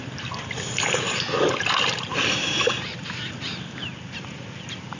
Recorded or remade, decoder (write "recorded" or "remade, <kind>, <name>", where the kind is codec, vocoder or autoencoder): remade, vocoder, BigVGAN v2